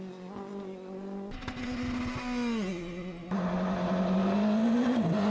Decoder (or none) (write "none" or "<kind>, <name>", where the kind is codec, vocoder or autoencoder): none